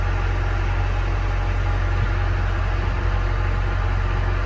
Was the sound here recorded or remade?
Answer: recorded